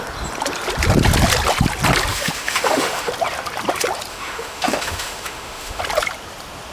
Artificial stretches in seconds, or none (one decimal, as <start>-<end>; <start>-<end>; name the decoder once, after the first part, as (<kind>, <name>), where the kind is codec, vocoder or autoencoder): 2.1-3.1 (autoencoder, DAC-VAE); 4.1-5.8